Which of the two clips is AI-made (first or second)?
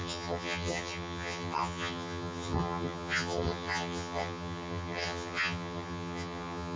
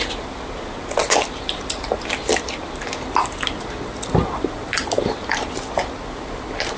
first